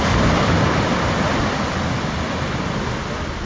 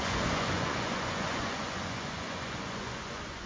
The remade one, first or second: second